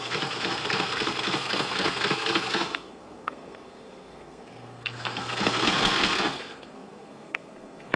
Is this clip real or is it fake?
fake